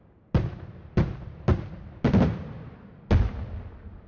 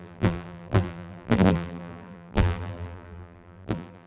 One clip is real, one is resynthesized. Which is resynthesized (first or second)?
second